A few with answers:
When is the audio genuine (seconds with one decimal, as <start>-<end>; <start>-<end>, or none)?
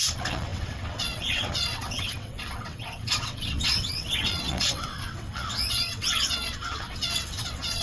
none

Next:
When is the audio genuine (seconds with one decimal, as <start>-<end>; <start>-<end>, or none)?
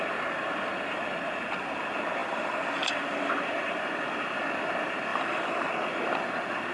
0.0-2.2; 3.3-5.1; 5.7-6.7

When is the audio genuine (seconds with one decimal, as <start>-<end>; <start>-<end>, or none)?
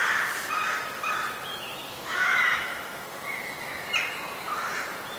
0.0-1.5; 3.9-5.2